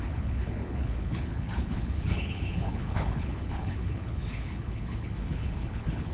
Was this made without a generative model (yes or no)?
no